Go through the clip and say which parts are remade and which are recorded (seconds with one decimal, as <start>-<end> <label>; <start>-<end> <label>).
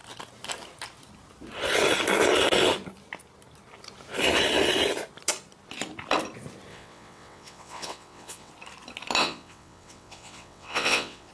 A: 0.0-6.7 recorded; 6.7-8.5 remade; 8.5-9.2 recorded; 9.2-11.3 remade